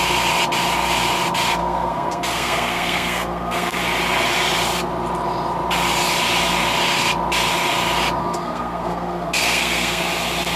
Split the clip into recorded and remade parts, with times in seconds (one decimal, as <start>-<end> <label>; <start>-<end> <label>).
0.0-1.6 recorded; 1.6-3.8 remade; 3.8-8.2 recorded; 8.2-10.0 remade; 10.0-10.6 recorded